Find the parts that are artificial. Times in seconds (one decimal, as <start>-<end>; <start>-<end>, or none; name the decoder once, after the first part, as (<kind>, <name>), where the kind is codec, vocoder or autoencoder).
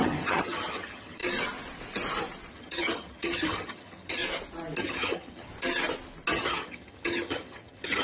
0.0-1.2 (vocoder, HiFi-GAN); 2.5-4.2; 4.8-5.5; 6.3-8.0